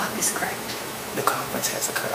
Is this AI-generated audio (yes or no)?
yes